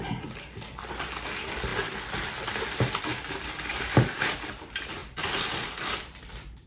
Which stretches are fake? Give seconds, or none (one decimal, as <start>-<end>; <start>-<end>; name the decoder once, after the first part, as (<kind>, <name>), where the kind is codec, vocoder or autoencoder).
none